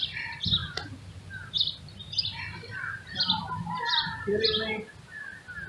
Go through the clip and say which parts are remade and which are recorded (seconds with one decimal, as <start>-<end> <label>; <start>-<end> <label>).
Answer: 0.0-5.7 recorded

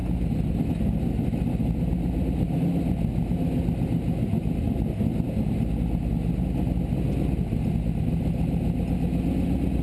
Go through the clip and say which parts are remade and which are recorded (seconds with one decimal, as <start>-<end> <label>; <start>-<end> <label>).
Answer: 0.0-9.8 recorded

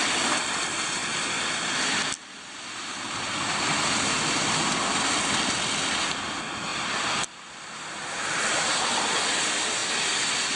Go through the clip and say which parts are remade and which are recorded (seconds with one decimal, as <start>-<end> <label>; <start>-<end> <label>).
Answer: 0.0-10.6 recorded

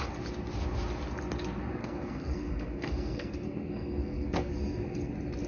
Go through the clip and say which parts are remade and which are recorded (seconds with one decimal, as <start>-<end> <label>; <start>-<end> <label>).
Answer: 0.0-1.8 recorded; 1.8-5.1 remade; 5.1-5.5 recorded

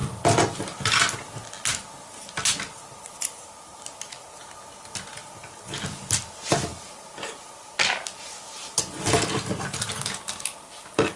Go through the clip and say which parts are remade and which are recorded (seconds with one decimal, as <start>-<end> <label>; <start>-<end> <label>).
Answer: 0.0-11.2 recorded

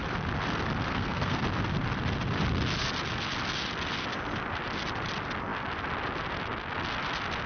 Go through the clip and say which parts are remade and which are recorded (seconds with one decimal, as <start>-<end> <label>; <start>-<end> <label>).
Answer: 0.0-0.9 recorded; 0.9-1.4 remade; 1.4-7.5 recorded

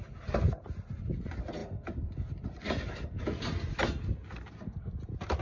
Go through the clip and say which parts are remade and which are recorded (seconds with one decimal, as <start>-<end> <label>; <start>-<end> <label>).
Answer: 0.0-5.4 recorded